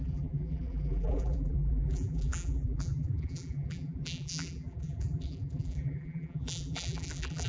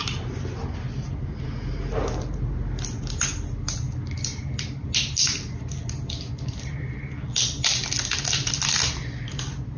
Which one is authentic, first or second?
second